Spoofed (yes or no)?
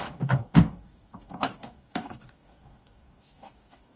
yes